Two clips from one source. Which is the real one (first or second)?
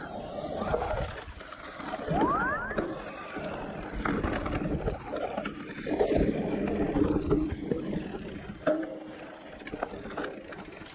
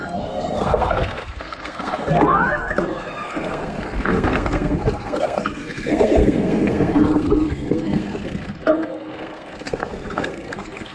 first